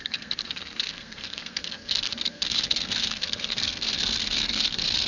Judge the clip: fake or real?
fake